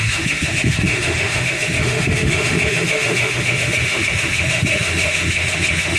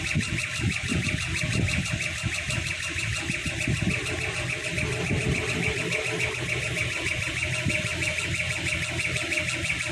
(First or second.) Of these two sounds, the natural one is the second